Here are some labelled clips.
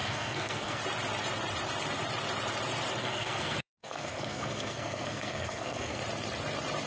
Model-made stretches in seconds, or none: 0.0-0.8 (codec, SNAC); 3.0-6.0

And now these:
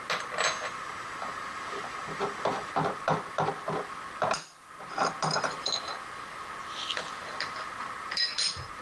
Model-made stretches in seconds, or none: none

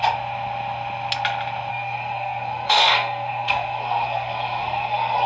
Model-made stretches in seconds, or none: 1.7-5.3 (codec, SNAC)

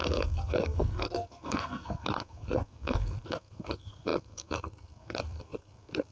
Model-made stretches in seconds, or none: 0.0-6.1 (codec, SNAC)

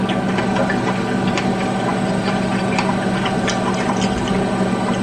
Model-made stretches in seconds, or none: none

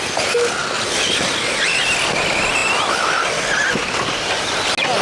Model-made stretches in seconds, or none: none

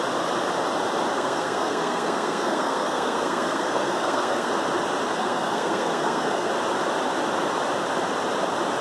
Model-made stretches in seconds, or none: 1.1-4.5 (codec, SNAC); 5.2-6.5